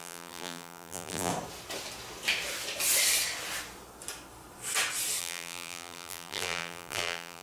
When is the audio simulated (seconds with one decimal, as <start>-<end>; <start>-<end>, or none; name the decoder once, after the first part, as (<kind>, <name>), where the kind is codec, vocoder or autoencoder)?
0.0-1.3 (vocoder, BigVGAN v2); 5.2-7.4